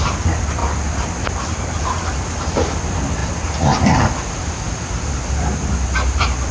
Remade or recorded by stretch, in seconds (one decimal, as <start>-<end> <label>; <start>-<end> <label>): 0.0-0.6 remade; 0.6-1.4 recorded; 1.4-3.2 remade; 3.2-4.4 recorded; 4.4-6.5 remade